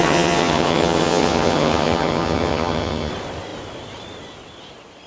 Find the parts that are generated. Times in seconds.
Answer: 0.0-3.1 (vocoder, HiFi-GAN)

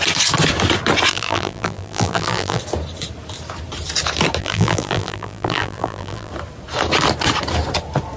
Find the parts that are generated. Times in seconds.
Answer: 1.1-2.6 (vocoder, BigVGAN v2); 4.4-6.3

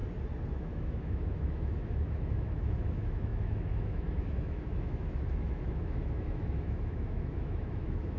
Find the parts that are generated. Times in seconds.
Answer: 0.5-8.2 (autoencoder, DAC-VAE)

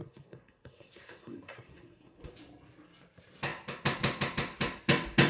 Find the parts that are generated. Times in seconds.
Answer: 0.0-2.3 (codec, SNAC)

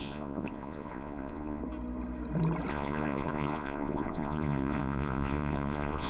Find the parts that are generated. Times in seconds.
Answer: 0.0-1.6 (vocoder, Vocos); 2.7-6.1

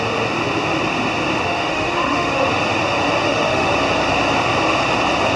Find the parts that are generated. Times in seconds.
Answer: 1.4-2.5 (autoencoder, DAC-VAE); 3.2-3.7

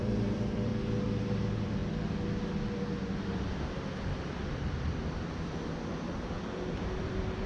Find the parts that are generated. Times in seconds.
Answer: 0.0-0.7 (vocoder, BigVGAN v2); 1.2-1.8; 4.4-7.5

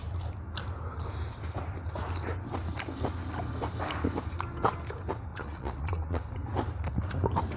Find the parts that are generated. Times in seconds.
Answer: 5.3-6.2 (vocoder, Vocos)